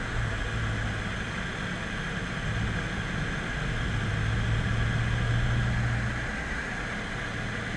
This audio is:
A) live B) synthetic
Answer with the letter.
A